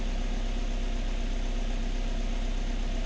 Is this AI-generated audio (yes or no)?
no